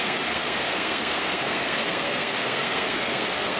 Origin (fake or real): fake